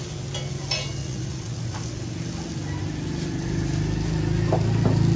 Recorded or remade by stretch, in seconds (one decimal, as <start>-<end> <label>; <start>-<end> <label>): 0.0-1.0 recorded; 1.0-1.6 remade; 1.6-5.2 recorded